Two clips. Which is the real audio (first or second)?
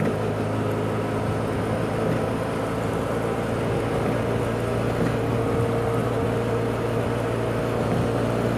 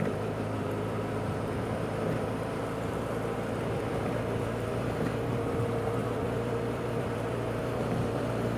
first